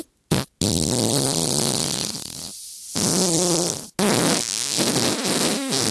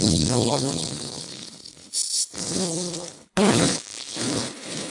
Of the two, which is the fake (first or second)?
second